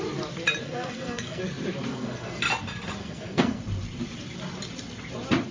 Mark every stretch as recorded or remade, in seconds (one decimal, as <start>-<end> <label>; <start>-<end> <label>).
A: 0.0-0.6 recorded; 0.6-1.4 remade; 1.4-1.9 recorded; 1.9-2.4 remade; 2.4-3.0 recorded; 3.0-3.6 remade; 3.6-5.5 recorded